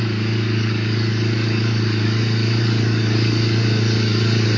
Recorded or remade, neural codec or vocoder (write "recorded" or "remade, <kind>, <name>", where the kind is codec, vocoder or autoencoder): remade, codec, DAC